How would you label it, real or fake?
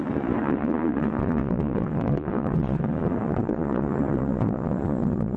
fake